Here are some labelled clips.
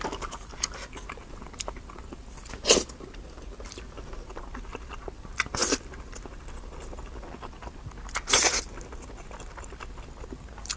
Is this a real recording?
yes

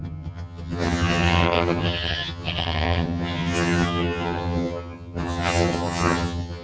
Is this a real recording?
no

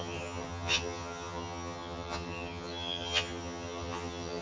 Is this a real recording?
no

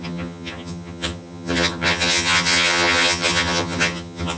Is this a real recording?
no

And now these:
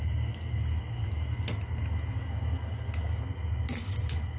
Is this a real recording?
yes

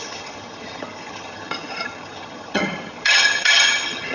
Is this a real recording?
no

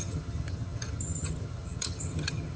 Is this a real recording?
no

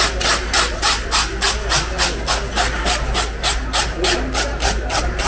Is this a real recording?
yes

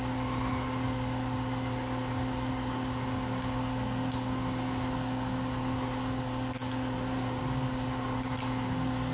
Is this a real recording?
yes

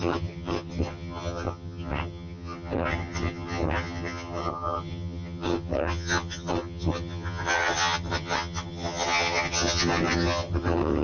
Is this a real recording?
no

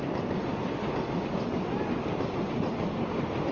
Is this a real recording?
yes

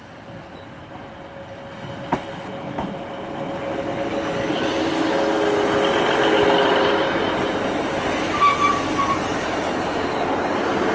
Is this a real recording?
yes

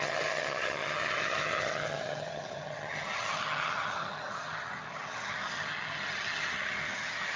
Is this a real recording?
no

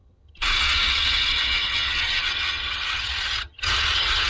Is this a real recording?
no